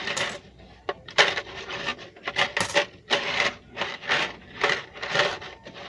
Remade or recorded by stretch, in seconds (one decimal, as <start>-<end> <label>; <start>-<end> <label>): 0.0-5.9 recorded